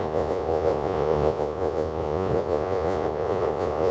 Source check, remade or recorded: remade